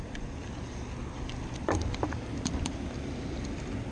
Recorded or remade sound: remade